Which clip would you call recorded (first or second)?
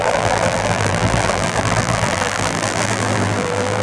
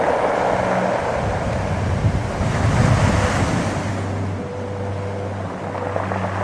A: second